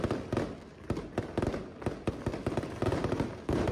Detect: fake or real real